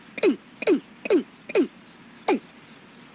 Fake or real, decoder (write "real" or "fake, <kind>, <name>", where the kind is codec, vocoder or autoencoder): real